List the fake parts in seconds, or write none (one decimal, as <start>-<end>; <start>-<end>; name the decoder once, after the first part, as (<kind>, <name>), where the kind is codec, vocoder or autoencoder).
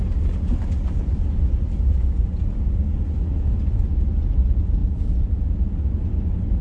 none